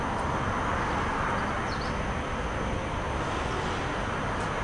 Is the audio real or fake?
real